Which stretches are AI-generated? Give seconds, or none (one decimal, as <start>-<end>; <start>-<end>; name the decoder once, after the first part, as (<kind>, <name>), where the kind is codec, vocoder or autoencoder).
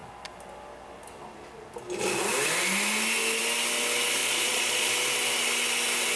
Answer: 4.2-4.9 (vocoder, Vocos)